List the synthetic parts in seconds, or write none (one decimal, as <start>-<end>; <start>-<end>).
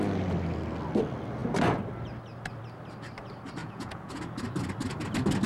3.6-4.2